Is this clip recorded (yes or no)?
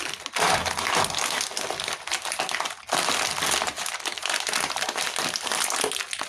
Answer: yes